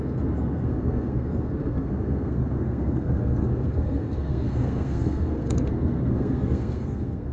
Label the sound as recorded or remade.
remade